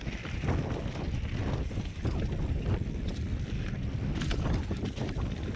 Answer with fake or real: real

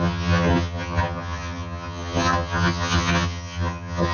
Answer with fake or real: fake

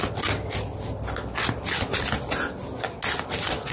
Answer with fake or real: real